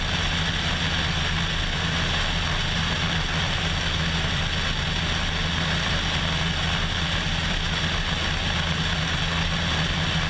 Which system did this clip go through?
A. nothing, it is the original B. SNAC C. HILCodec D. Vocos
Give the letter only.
A